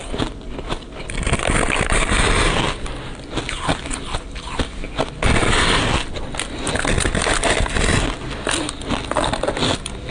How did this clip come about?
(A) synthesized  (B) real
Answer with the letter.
B